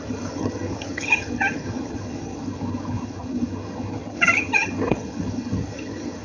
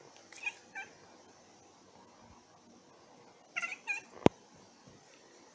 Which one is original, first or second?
second